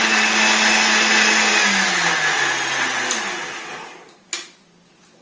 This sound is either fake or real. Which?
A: real